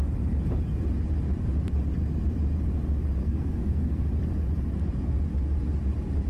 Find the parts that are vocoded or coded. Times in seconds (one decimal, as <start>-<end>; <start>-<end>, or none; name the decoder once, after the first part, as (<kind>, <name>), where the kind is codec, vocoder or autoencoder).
3.2-4.0 (codec, SNAC)